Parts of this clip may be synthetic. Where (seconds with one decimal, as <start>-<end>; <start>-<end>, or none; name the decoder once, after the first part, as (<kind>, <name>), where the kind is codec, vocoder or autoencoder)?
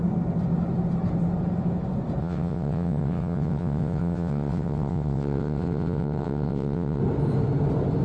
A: 2.2-7.0 (vocoder, WaveNeXt)